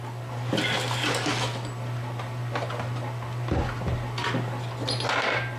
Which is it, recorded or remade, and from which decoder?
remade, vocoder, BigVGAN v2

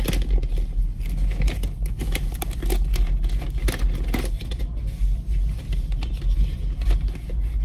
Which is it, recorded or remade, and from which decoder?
recorded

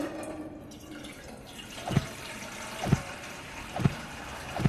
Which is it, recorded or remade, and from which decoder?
remade, vocoder, BigVGAN v2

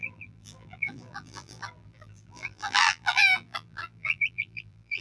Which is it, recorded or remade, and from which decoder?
remade, vocoder, BigVGAN v2